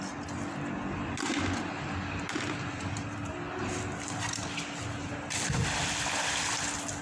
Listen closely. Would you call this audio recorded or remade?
recorded